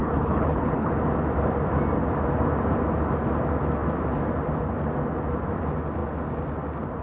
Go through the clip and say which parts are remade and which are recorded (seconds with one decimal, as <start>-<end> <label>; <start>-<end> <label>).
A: 0.0-0.9 remade; 0.9-7.0 recorded